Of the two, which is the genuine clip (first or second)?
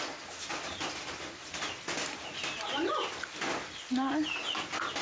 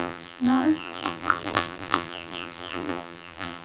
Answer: first